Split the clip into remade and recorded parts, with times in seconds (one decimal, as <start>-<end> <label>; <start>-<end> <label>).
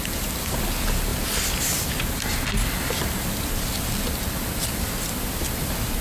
0.0-6.0 recorded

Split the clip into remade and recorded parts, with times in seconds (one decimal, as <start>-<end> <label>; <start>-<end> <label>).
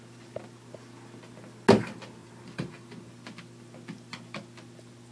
0.0-2.2 recorded; 2.2-3.1 remade; 3.1-5.1 recorded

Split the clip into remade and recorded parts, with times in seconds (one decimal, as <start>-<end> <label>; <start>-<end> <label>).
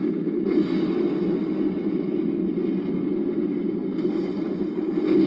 0.0-5.3 recorded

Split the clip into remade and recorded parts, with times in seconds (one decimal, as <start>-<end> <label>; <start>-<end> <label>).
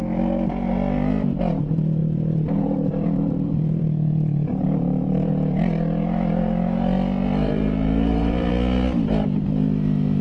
0.0-2.0 recorded; 2.0-5.3 remade; 5.3-7.4 recorded; 7.4-8.5 remade; 8.5-10.2 recorded